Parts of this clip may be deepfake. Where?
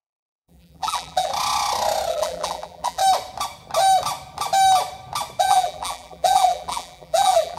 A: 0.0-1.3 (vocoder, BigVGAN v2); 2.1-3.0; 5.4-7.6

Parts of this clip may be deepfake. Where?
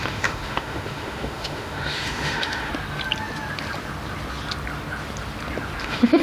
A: 0.0-2.7 (autoencoder, DAC-VAE); 5.8-6.2